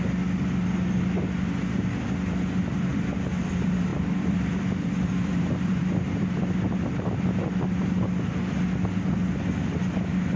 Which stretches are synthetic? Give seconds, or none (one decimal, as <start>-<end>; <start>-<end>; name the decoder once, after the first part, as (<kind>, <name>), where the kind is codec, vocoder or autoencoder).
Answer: 2.9-3.5 (vocoder, BigVGAN v2); 3.9-5.8